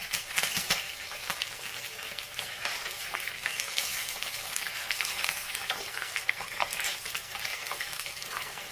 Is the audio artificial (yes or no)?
yes